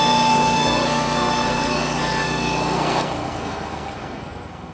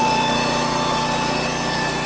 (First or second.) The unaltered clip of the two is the second